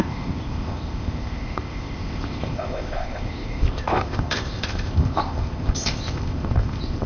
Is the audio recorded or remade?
remade